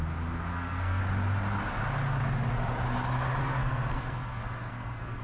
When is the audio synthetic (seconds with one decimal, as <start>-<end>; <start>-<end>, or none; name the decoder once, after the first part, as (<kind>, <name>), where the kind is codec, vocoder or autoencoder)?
0.5-1.0 (codec, SNAC); 3.4-5.2